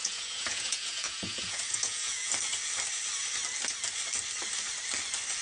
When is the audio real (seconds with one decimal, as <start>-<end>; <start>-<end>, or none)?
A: 2.3-5.4